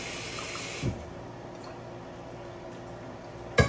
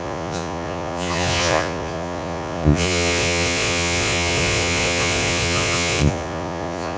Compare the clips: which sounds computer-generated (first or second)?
second